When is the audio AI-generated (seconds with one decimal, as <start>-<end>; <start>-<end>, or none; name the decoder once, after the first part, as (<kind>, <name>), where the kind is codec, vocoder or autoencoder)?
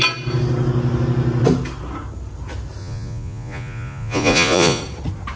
2.8-4.8 (vocoder, Vocos)